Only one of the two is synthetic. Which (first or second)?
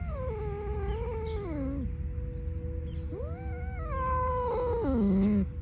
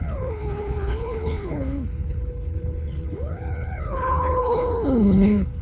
second